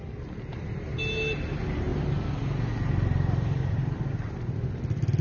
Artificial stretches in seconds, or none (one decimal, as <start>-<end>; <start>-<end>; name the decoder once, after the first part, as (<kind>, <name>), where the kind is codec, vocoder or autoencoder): none